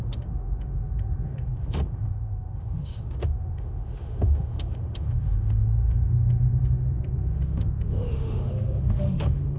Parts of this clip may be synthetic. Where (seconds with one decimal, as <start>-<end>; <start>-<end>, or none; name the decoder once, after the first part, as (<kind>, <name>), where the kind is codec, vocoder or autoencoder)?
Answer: 0.0-9.6 (autoencoder, DAC-VAE)